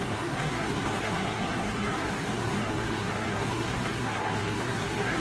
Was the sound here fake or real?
fake